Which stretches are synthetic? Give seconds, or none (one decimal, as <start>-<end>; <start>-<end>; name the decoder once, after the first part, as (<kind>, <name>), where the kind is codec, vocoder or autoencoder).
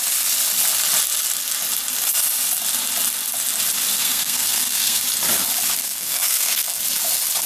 4.0-5.0 (codec, SNAC); 5.8-6.8